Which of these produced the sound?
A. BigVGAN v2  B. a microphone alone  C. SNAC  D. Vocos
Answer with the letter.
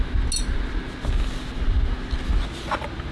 B